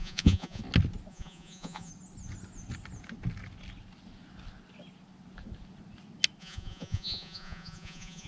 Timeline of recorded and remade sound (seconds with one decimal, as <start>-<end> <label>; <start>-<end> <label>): 0.0-0.6 remade; 0.6-1.1 recorded; 1.1-1.9 remade; 1.9-6.4 recorded; 6.4-8.3 remade